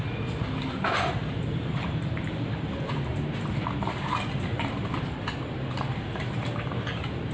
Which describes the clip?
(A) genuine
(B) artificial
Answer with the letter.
B